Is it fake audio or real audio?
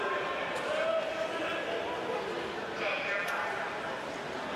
real